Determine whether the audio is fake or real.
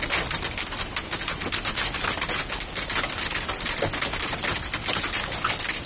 real